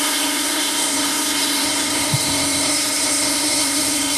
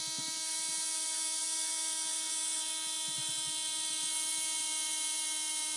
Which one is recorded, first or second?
second